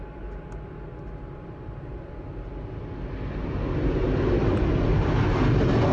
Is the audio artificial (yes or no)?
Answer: no